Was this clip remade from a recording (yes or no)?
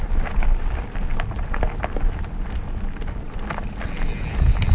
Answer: no